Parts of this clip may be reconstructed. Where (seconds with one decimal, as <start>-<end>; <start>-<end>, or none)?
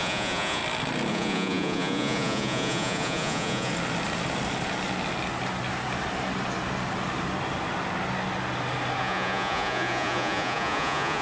0.0-0.6; 1.1-3.7; 9.0-11.2